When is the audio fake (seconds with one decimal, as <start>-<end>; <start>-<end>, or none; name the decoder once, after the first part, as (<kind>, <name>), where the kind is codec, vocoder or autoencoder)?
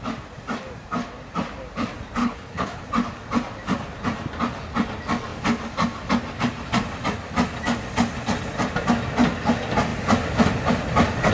2.2-2.8 (codec, HILCodec)